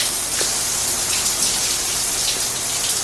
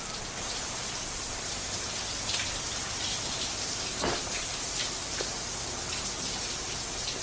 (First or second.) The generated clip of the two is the second